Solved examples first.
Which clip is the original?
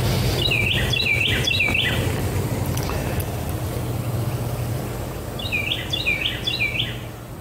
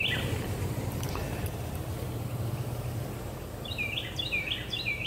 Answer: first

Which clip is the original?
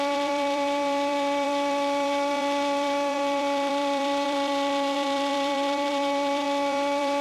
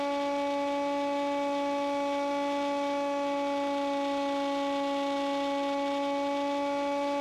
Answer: second